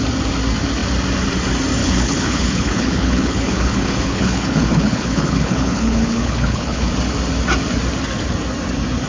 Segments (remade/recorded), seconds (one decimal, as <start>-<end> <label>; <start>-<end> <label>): 0.0-1.8 recorded; 1.8-6.9 remade; 6.9-9.1 recorded